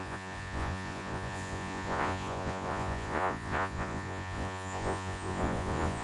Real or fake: fake